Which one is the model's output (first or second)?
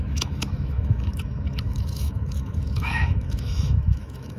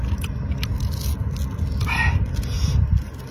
first